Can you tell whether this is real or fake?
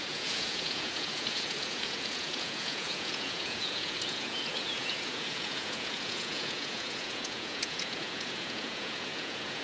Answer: fake